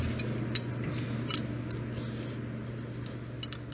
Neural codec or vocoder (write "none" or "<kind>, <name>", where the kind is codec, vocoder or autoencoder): none